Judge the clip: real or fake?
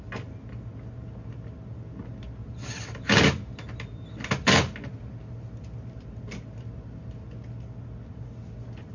real